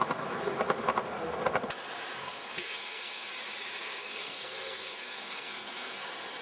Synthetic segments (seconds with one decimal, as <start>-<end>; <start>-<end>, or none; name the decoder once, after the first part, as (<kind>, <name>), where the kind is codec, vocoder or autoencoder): 2.2-3.3 (codec, SNAC); 4.0-6.0